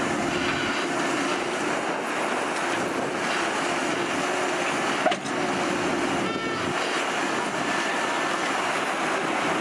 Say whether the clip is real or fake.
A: real